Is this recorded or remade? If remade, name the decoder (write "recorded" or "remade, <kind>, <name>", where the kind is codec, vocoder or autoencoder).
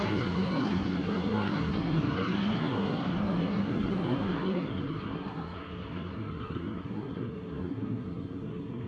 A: remade, codec, SNAC